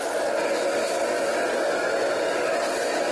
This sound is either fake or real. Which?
real